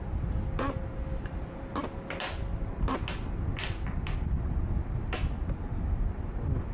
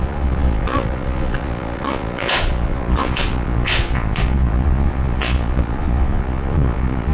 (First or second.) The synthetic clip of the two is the second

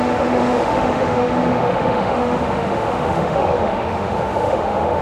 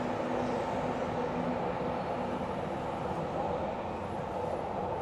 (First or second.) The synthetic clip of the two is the first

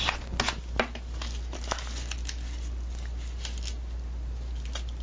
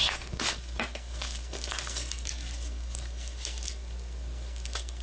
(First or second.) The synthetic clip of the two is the second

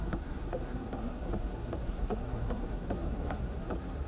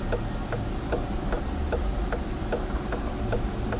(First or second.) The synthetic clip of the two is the first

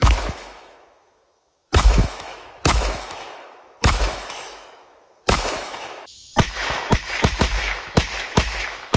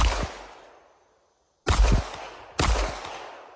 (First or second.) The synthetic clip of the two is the first